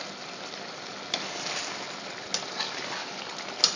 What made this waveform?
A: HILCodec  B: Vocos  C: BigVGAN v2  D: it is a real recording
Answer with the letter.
D